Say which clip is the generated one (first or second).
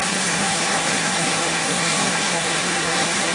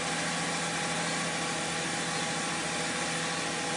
first